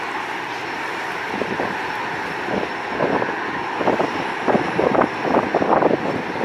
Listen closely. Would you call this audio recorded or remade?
recorded